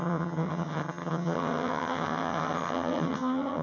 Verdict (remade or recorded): remade